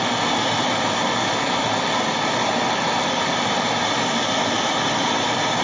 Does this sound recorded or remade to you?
recorded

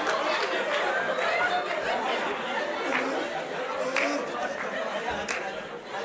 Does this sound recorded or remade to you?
recorded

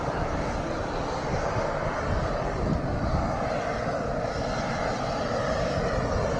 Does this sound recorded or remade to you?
recorded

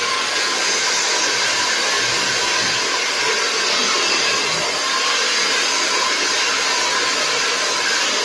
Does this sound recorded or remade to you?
recorded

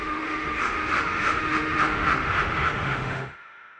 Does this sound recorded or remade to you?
remade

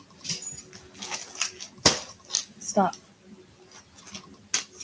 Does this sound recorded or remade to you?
recorded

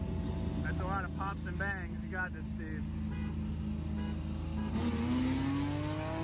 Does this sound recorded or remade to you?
recorded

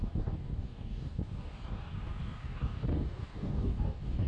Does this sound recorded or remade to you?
remade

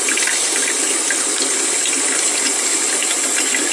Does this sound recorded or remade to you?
recorded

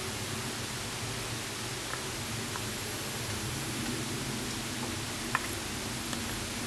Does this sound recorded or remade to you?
recorded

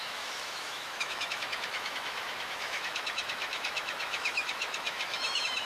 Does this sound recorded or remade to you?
remade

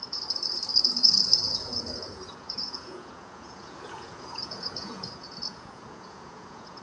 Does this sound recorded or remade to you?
remade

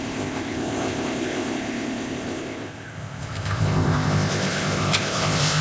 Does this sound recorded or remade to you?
remade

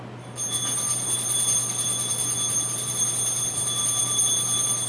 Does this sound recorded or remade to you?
recorded